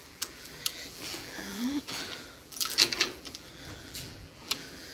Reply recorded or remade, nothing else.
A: remade